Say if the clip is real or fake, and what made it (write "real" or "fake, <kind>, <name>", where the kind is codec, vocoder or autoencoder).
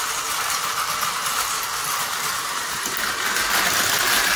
real